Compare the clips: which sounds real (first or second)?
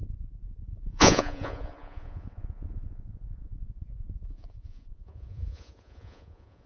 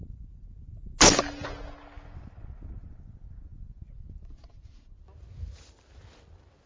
second